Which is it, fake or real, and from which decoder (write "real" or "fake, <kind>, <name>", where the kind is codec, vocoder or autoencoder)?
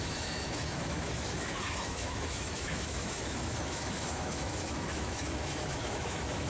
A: fake, autoencoder, DAC-VAE